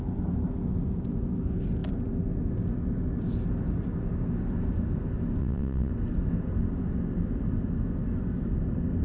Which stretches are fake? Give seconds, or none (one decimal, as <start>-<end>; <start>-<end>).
5.4-5.9